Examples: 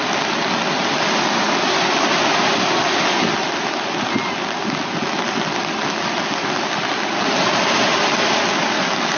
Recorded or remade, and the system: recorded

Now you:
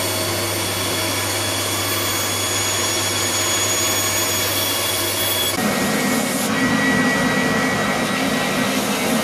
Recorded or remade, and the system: recorded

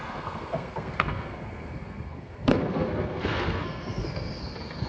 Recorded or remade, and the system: remade, codec, SNAC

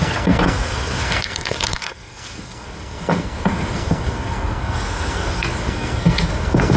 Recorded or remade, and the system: remade, codec, SNAC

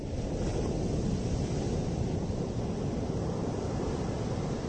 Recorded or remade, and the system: recorded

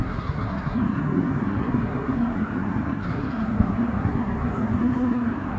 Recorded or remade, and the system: remade, codec, SNAC